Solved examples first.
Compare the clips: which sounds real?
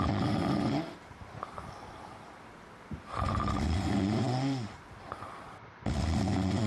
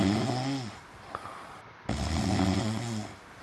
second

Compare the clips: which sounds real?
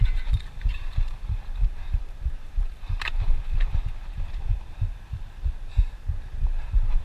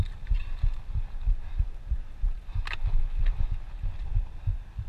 second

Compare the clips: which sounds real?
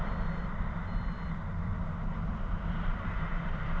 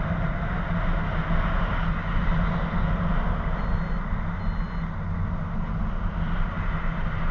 second